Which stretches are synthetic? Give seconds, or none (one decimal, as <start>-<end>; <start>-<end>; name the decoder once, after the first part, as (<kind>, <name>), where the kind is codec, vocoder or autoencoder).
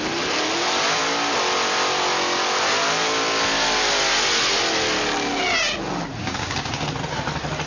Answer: 6.2-6.9 (codec, DAC)